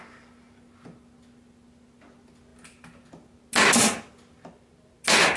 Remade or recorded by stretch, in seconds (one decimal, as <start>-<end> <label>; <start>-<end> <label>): 0.0-5.4 recorded